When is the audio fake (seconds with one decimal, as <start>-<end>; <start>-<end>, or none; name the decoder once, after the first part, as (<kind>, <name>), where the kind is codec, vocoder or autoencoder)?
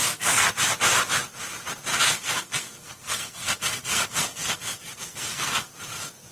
0.0-0.5 (codec, SNAC); 1.9-5.7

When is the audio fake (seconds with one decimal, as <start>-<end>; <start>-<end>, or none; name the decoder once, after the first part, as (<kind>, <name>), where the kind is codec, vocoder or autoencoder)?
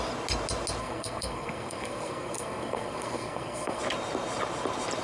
0.8-3.8 (codec, SNAC)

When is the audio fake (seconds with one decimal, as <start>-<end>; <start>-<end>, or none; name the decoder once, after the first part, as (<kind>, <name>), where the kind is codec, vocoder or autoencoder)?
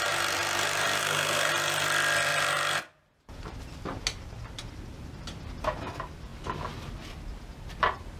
1.0-1.5 (codec, SNAC)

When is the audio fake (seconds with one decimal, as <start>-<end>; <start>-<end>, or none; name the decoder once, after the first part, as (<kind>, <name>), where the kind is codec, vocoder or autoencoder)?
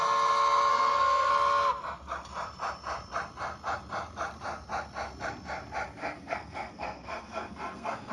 0.7-1.3 (codec, SNAC); 6.0-8.1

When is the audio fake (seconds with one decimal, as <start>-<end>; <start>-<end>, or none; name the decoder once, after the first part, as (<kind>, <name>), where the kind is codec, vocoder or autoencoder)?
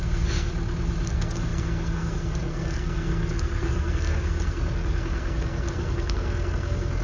0.0-0.5 (codec, SNAC); 1.1-7.0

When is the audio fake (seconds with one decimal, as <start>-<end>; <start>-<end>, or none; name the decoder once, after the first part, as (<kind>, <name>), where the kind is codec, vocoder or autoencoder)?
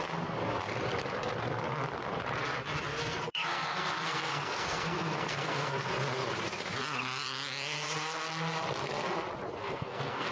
2.9-5.9 (codec, SNAC); 9.6-10.3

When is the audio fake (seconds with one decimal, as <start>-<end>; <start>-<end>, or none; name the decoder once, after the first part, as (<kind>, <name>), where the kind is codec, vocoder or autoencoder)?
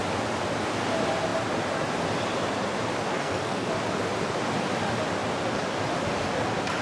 3.1-3.7 (codec, SNAC)